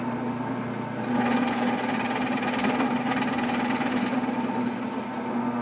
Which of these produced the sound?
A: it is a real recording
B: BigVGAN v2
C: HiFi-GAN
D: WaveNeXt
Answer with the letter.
A